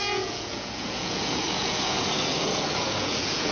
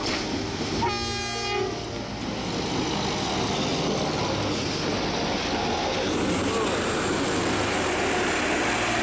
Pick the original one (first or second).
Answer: second